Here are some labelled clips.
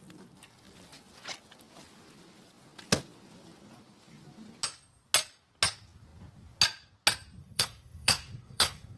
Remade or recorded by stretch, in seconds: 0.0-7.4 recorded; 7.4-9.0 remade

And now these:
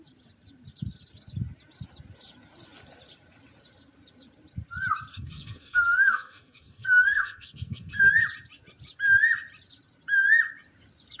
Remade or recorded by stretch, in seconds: 0.0-5.1 recorded; 5.1-8.0 remade; 8.0-11.2 recorded

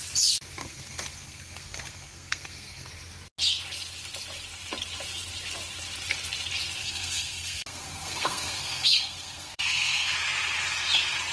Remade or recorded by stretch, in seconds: 0.0-0.6 recorded; 0.6-2.9 remade; 2.9-6.8 recorded; 6.8-10.1 remade; 10.1-11.3 recorded

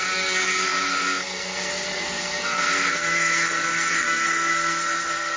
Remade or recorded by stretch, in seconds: 0.0-5.4 remade

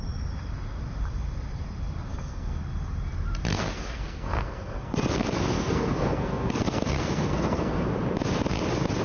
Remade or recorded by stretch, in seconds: 0.0-2.1 recorded; 2.1-2.6 remade; 2.6-3.5 recorded; 3.5-7.9 remade; 7.9-9.0 recorded

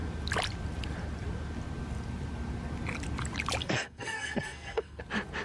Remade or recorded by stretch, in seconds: 0.0-3.6 recorded; 3.6-5.0 remade; 5.0-5.4 recorded

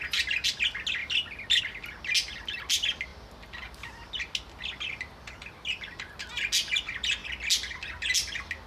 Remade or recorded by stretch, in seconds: 0.0-8.7 recorded

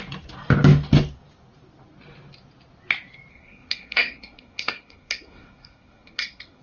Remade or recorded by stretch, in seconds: 0.0-3.3 recorded; 3.3-6.6 remade